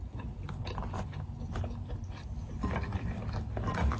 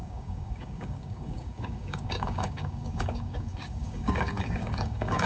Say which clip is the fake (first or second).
second